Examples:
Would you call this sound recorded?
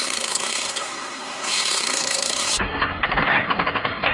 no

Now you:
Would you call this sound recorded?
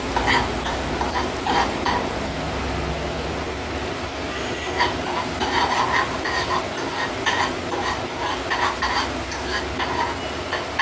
yes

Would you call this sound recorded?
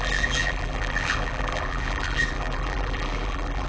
no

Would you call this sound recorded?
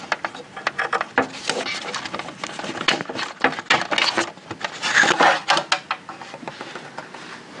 yes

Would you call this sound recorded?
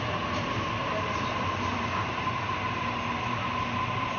yes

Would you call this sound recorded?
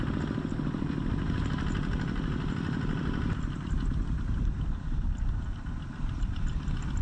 yes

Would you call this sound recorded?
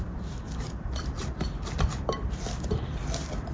no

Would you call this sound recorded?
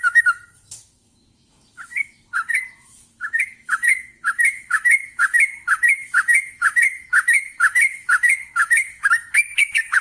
no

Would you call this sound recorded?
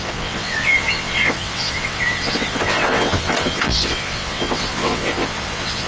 no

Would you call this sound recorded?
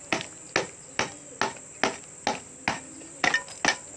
yes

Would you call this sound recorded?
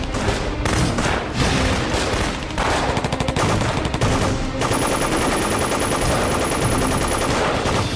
yes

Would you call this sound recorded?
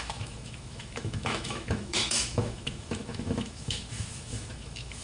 no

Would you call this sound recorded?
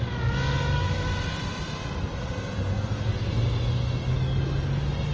yes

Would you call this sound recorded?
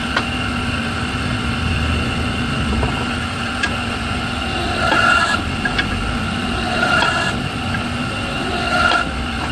yes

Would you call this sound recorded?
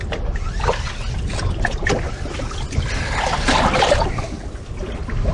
yes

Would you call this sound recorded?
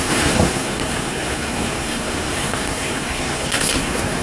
no